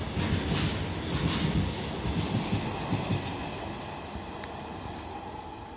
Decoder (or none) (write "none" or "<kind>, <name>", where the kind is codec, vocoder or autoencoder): none